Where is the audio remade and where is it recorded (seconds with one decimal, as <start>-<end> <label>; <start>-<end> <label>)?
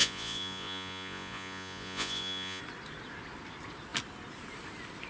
0.0-2.6 remade; 2.6-5.1 recorded